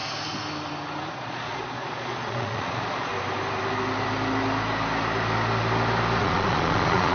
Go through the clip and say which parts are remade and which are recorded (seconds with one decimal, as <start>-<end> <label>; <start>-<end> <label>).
0.0-1.1 recorded; 1.1-3.1 remade; 3.1-6.2 recorded; 6.2-7.1 remade

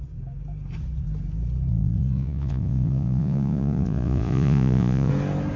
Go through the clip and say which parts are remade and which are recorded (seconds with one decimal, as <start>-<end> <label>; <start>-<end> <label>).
0.0-1.7 recorded; 1.7-5.1 remade; 5.1-5.6 recorded

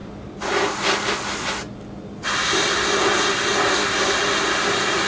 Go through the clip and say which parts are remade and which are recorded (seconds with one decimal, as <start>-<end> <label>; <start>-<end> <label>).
0.0-5.1 recorded

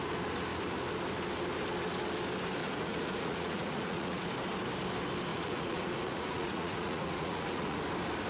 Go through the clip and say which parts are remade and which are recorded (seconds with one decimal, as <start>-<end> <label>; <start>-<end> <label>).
0.0-2.6 recorded; 2.6-4.2 remade; 4.2-5.3 recorded; 5.3-7.8 remade; 7.8-8.3 recorded

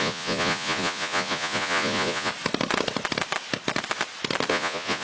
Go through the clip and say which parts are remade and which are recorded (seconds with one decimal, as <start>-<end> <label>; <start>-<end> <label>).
0.0-2.3 remade; 2.3-4.5 recorded; 4.5-5.0 remade

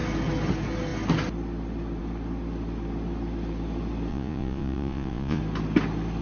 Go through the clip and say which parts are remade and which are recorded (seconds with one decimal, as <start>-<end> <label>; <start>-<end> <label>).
0.0-4.1 recorded; 4.1-5.4 remade; 5.4-6.2 recorded

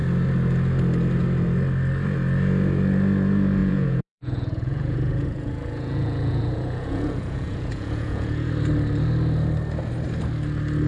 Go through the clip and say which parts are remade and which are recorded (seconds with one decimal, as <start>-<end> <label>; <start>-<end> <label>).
0.0-3.6 recorded; 3.6-8.5 remade; 8.5-10.9 recorded

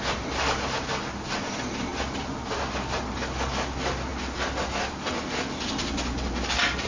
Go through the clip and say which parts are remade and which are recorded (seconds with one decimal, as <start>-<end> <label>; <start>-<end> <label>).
0.0-6.9 recorded